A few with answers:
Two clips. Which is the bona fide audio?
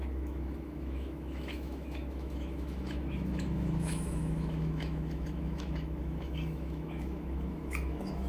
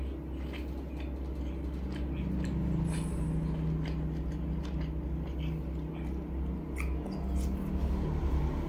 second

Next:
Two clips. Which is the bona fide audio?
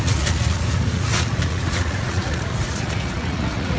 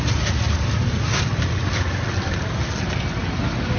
second